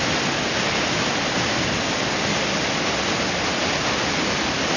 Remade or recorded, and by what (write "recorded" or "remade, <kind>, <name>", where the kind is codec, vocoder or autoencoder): recorded